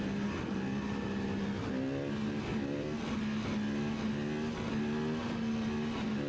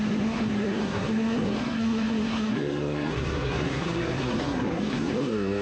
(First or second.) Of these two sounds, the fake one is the second